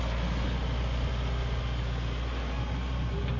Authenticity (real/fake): real